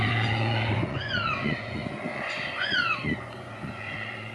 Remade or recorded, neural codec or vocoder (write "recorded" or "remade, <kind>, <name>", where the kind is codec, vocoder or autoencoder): remade, vocoder, Vocos